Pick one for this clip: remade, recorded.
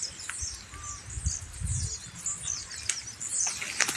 recorded